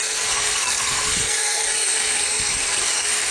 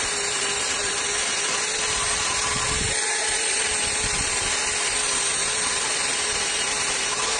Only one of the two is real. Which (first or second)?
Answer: second